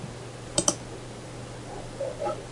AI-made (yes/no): no